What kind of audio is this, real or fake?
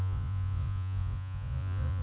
fake